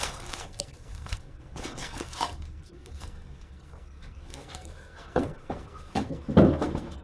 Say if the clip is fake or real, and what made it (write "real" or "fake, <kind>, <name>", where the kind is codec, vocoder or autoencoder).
fake, codec, SNAC